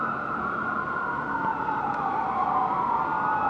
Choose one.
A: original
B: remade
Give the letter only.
A